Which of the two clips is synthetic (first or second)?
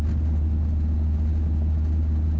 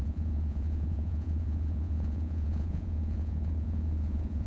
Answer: second